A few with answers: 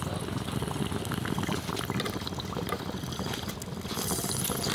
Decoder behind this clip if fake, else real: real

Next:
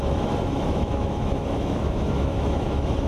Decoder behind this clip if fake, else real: fake, autoencoder, DAC-VAE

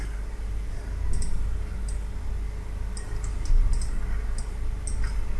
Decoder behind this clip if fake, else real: real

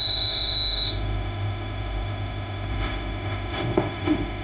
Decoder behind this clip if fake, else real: fake, autoencoder, DAC-VAE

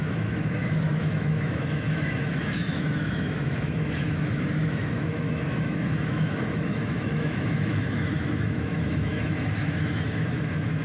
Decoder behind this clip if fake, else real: fake, autoencoder, DAC-VAE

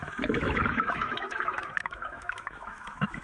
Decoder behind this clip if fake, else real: fake, autoencoder, DAC-VAE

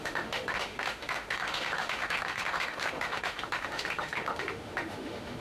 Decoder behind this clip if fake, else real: fake, autoencoder, DAC-VAE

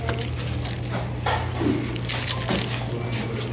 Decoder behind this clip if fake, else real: real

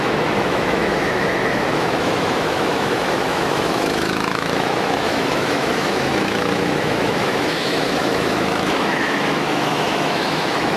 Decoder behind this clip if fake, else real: fake, autoencoder, DAC-VAE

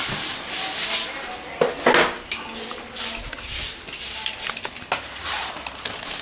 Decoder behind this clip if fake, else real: real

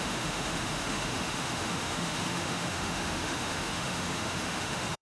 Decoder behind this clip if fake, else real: fake, autoencoder, DAC-VAE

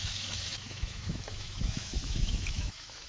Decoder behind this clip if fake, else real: fake, autoencoder, DAC-VAE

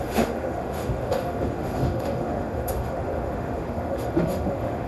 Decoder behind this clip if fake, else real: fake, autoencoder, DAC-VAE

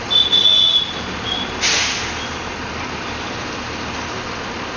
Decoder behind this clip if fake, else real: real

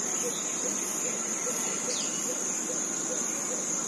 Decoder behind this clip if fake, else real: real